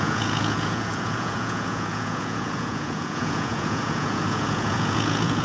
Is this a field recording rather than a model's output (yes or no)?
no